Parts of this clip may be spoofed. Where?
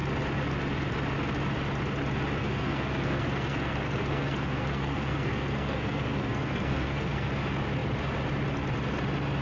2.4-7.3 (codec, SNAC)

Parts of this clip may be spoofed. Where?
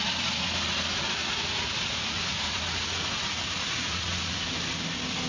1.2-4.4 (vocoder, Vocos)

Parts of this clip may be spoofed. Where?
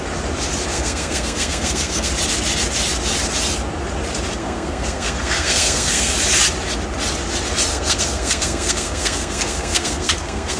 0.7-2.1 (codec, SNAC); 4.4-6.1; 7.7-10.6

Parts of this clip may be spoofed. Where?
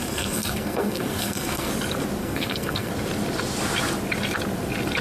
0.0-1.7 (codec, SNAC); 2.2-2.9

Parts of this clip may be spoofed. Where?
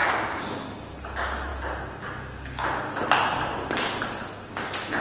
none